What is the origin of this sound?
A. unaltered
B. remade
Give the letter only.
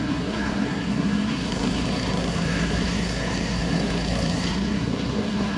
B